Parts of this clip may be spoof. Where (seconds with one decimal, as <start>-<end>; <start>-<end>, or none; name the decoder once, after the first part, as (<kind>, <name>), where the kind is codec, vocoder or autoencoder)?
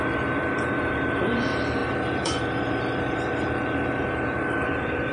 0.0-5.1 (vocoder, BigVGAN v2)